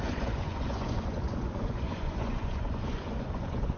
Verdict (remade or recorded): remade